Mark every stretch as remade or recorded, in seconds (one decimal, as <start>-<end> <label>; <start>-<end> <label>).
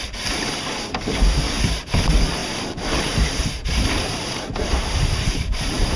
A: 0.0-2.4 recorded; 2.4-6.0 remade